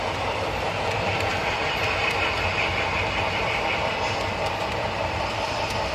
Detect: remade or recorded remade